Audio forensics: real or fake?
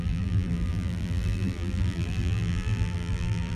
fake